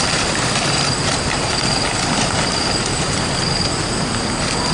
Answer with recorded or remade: remade